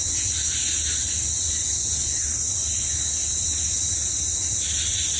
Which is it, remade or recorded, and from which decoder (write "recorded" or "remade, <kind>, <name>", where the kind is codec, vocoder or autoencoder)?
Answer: recorded